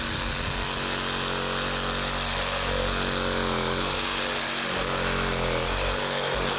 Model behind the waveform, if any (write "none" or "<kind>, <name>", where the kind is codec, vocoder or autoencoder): none